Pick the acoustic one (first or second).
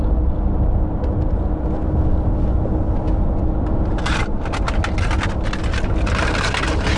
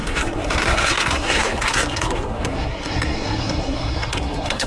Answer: first